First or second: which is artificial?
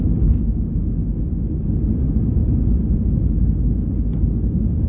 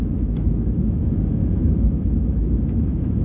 second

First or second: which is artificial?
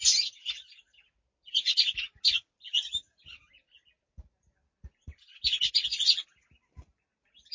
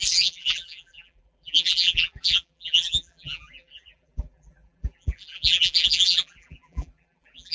second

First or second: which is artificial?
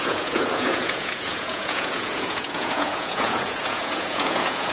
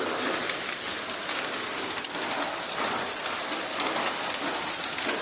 first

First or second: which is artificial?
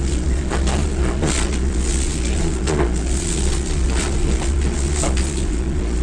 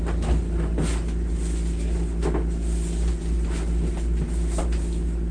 first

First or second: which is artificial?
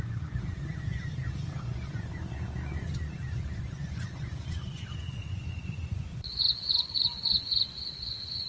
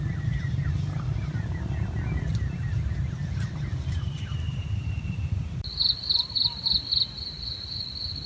first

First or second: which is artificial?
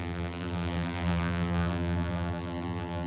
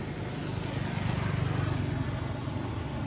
first